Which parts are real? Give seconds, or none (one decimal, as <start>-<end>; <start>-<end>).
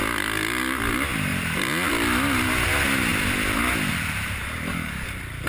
0.0-4.4; 5.1-5.5